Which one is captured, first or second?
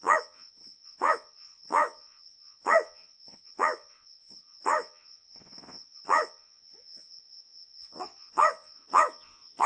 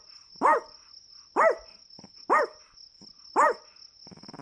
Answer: second